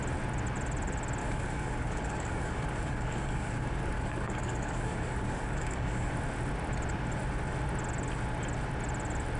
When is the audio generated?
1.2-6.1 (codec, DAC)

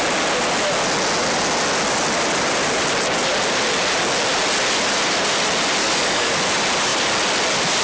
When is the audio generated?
5.8-6.4 (codec, DAC)

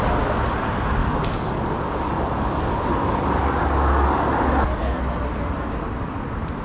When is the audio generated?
1.0-5.0 (codec, DAC)

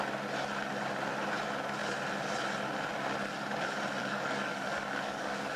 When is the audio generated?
4.0-5.6 (codec, DAC)

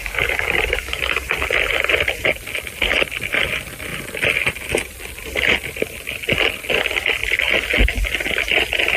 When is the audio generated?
0.0-1.0 (codec, DAC)